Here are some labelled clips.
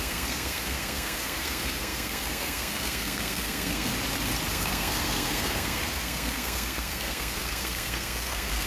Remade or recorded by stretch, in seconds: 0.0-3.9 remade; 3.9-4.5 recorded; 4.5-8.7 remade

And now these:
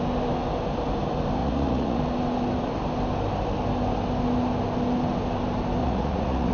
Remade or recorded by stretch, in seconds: 0.0-1.4 recorded; 1.4-2.0 remade; 2.0-5.8 recorded; 5.8-6.5 remade